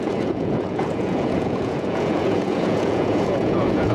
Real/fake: fake